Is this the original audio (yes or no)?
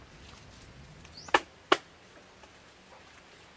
yes